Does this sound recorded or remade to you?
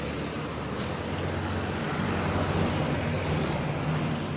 recorded